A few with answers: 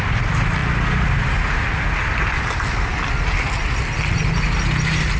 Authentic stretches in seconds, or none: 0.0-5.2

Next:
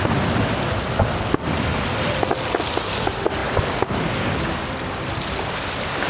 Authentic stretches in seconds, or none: 0.0-6.1

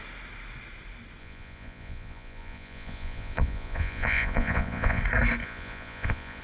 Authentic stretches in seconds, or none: 0.0-1.2; 5.0-5.4

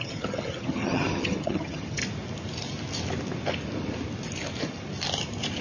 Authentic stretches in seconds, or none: 2.0-5.6

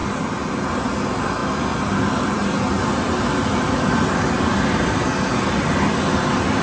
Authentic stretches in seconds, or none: 0.0-6.6

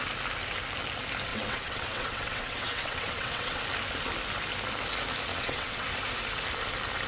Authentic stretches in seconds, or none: 0.0-1.3; 3.6-5.3; 5.9-7.1